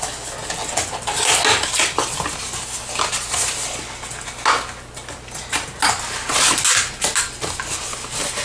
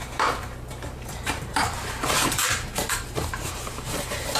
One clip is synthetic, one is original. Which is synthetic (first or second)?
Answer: second